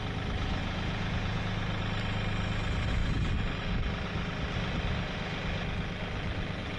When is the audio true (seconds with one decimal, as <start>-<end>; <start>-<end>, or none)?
0.0-0.6; 1.4-6.8